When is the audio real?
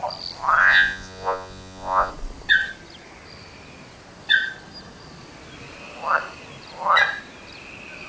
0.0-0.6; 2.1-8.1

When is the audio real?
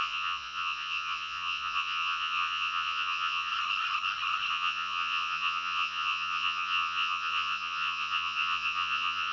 3.5-4.5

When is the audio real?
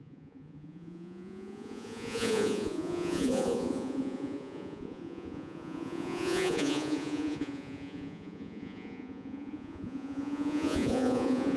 none